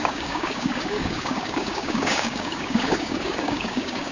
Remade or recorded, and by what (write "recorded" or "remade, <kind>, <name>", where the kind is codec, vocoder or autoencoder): remade, codec, DAC